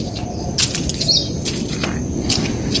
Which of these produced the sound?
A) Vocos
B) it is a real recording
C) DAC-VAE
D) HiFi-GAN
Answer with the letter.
B